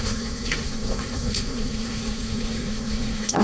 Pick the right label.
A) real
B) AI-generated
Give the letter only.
B